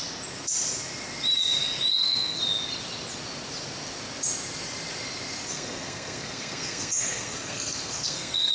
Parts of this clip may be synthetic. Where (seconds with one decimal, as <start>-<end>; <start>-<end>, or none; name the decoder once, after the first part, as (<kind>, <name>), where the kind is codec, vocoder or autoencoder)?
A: 1.9-2.4 (codec, SNAC); 5.5-8.5

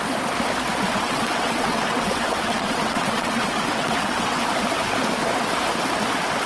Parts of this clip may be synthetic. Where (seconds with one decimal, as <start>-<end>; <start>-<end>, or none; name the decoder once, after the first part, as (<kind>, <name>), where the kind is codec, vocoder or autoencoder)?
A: 0.9-4.4 (vocoder, WaveNeXt)